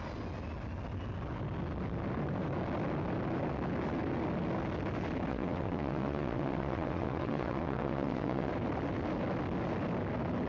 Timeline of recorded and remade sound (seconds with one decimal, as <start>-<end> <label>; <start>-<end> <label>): 0.0-5.3 recorded; 5.3-8.5 remade; 8.5-10.5 recorded